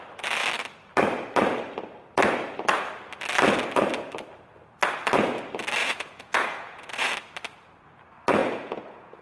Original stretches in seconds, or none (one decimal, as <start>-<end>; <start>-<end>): 0.0-5.8; 7.1-8.4